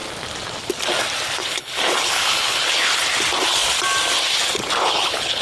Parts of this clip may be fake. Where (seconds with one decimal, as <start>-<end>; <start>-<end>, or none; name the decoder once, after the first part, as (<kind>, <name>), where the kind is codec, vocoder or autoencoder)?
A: 1.4-3.0 (codec, HILCodec); 4.8-5.4